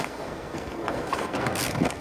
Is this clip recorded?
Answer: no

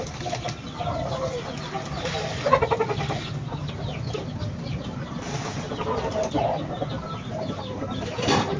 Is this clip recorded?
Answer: yes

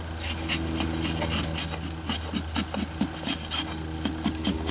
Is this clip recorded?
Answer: yes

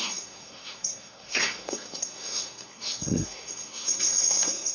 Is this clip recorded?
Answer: no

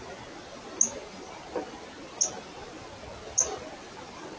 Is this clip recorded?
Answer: yes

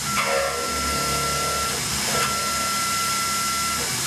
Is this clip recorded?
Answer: yes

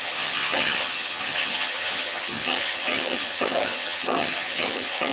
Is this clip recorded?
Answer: no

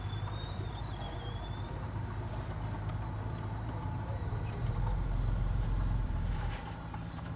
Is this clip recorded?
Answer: no